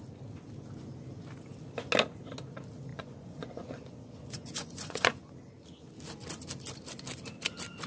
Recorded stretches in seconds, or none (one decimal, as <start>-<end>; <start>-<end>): 0.0-2.9; 5.3-7.9